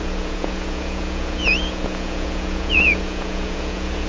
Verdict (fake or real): fake